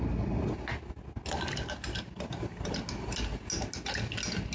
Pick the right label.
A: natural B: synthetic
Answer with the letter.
A